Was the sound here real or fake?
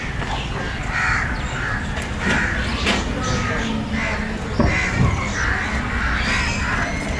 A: real